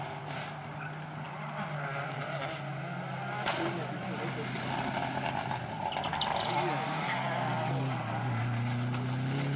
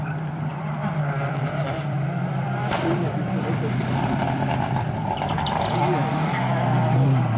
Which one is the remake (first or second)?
second